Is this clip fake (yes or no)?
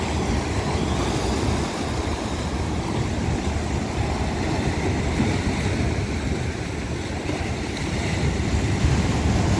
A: no